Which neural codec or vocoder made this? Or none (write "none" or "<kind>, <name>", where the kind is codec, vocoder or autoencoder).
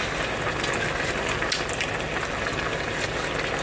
none